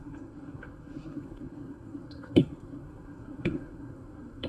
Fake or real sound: fake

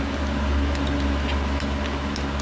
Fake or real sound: real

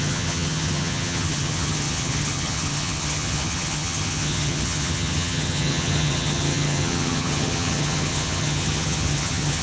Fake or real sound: fake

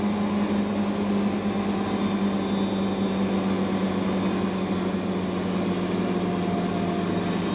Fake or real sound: real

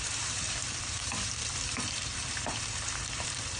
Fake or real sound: fake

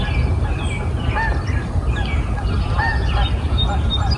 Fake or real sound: real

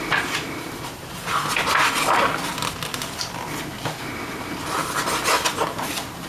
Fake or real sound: real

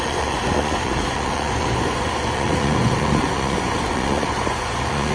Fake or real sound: fake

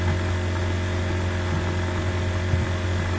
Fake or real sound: real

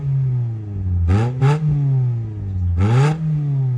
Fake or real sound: real